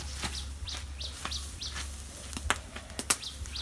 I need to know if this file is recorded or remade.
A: recorded